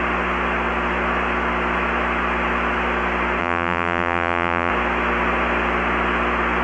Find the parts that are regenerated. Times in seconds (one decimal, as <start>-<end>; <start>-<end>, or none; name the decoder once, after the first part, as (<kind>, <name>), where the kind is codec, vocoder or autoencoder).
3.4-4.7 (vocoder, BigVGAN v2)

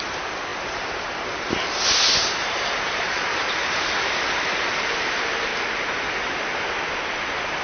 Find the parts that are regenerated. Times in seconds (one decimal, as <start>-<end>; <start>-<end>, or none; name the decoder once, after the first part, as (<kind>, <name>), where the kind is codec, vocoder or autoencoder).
0.0-5.5 (vocoder, BigVGAN v2)

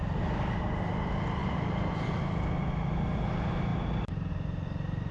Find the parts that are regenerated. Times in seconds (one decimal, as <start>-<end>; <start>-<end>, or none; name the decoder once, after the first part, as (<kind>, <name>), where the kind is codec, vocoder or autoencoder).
1.4-2.2 (vocoder, BigVGAN v2); 3.7-4.3

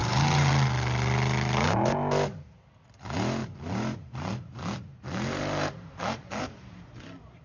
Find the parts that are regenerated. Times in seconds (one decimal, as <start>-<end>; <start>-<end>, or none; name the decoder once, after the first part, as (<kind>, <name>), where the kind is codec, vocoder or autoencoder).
0.0-0.5 (vocoder, BigVGAN v2); 3.4-7.0

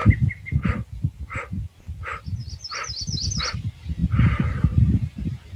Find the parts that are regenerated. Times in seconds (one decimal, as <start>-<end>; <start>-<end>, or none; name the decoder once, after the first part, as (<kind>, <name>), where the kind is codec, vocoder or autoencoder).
3.4-5.6 (vocoder, BigVGAN v2)

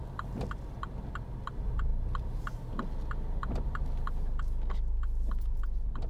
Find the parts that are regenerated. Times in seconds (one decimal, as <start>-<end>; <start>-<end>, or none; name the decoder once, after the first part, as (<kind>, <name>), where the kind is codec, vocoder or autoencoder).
none

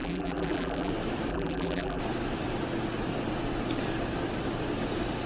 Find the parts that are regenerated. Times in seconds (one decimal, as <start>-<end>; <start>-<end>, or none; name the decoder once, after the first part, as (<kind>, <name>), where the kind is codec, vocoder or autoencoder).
0.0-0.9 (vocoder, BigVGAN v2); 1.3-2.0